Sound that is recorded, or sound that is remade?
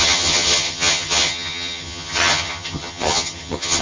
remade